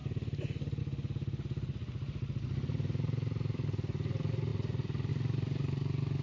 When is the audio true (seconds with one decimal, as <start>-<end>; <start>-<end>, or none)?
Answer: 0.0-6.2